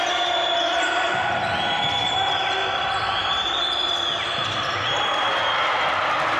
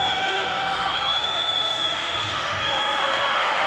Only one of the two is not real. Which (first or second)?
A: second